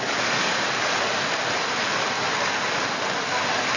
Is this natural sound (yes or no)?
yes